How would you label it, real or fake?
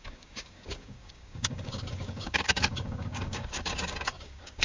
fake